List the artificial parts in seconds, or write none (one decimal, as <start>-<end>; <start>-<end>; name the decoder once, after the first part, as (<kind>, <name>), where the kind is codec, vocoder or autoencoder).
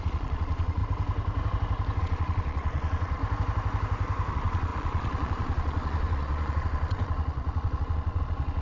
0.0-0.8 (vocoder, Vocos); 2.0-3.2; 4.3-8.6